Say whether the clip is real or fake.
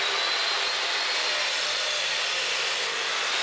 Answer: real